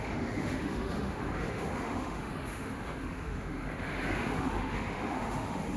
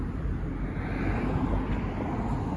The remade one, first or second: first